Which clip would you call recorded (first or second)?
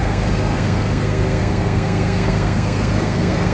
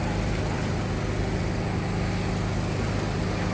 second